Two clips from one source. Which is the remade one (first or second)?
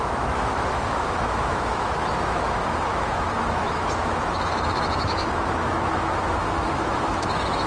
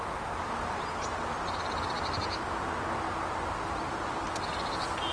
first